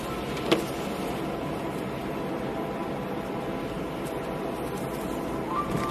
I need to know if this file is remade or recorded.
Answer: recorded